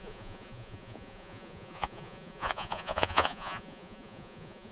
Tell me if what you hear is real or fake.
fake